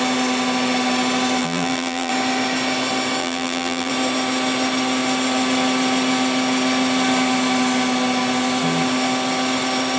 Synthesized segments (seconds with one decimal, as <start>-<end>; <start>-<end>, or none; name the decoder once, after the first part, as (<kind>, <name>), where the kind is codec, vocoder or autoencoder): 1.4-2.1 (vocoder, BigVGAN v2); 3.2-3.9